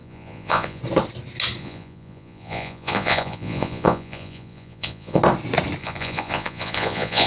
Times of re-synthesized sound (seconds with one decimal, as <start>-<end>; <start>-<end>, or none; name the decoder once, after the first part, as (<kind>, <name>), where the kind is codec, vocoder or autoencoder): 0.0-0.8 (vocoder, Vocos); 1.6-5.2; 5.8-7.3